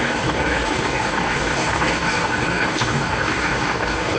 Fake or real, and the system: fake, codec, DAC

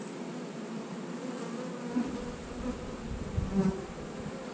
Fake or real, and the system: real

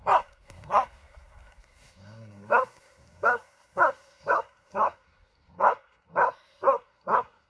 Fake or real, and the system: fake, codec, SNAC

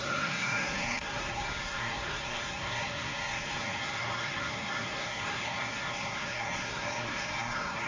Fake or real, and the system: fake, codec, SNAC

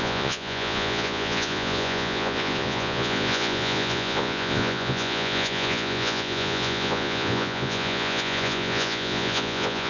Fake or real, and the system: fake, vocoder, Vocos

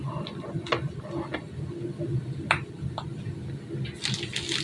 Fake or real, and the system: real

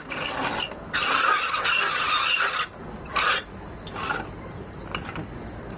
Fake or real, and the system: real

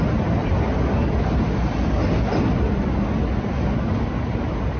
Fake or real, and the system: real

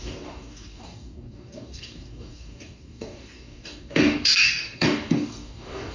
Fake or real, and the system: fake, codec, DAC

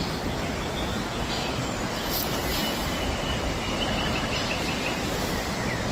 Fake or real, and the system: fake, vocoder, BigVGAN v2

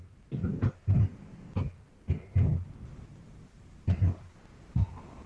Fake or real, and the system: real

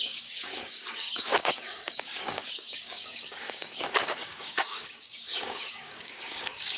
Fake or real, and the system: fake, codec, DAC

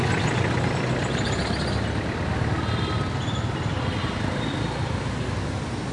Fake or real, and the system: real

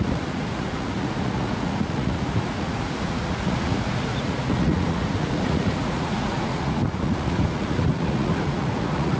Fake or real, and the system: fake, vocoder, Vocos